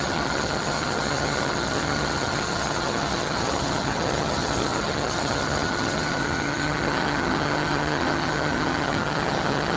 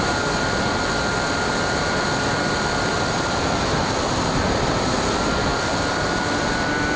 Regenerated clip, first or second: first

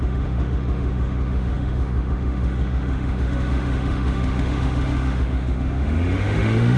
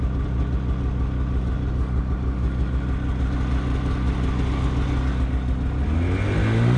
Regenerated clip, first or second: first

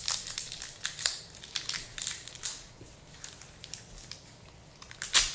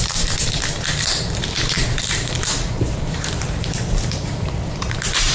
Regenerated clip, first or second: second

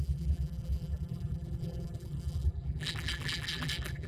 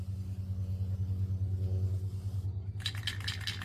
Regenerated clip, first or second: first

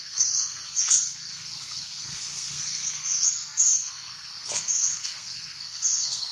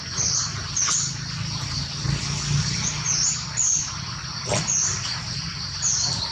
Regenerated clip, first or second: first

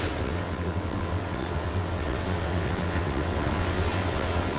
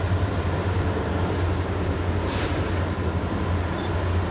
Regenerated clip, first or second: first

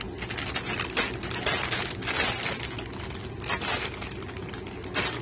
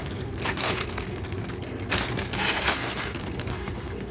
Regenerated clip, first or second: second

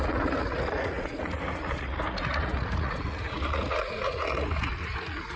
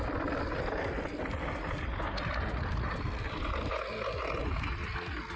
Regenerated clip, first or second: first